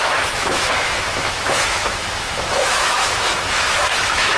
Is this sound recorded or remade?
remade